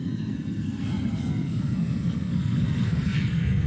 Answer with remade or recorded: remade